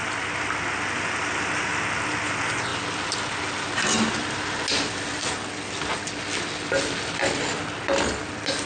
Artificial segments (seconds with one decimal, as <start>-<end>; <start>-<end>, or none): none